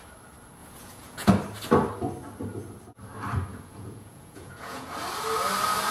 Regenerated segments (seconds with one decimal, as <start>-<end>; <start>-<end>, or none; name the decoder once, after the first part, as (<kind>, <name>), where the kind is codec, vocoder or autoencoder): 0.6-1.3 (vocoder, Vocos); 3.5-4.9